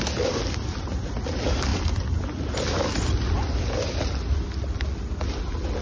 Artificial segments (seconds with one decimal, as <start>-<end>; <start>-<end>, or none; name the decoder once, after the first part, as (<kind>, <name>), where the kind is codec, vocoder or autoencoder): none